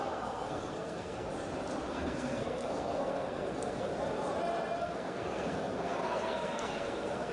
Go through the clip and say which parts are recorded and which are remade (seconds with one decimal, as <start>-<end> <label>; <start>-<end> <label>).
0.0-1.3 remade; 1.3-1.9 recorded; 1.9-3.9 remade; 3.9-4.8 recorded; 4.8-7.3 remade